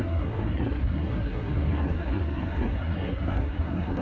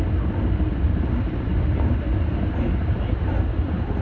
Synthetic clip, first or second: first